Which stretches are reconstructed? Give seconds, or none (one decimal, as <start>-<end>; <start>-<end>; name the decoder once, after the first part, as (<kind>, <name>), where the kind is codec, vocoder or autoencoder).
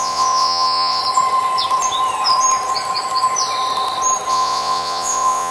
0.0-1.0 (vocoder, Vocos); 4.3-5.5